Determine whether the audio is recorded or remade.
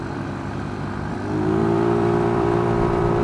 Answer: remade